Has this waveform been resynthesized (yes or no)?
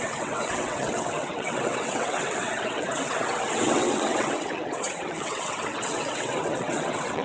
yes